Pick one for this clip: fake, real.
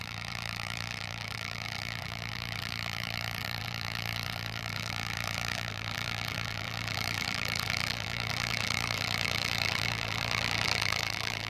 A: fake